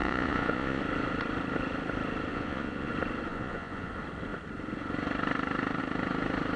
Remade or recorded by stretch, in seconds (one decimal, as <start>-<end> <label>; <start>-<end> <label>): 0.0-0.8 remade; 0.8-2.3 recorded; 2.3-2.9 remade; 2.9-3.3 recorded; 3.3-3.9 remade; 3.9-6.6 recorded

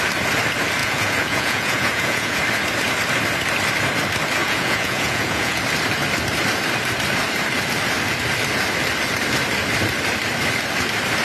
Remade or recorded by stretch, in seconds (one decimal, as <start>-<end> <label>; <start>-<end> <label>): 0.0-0.8 recorded; 0.8-2.4 remade; 2.4-4.4 recorded; 4.4-5.6 remade; 5.6-11.2 recorded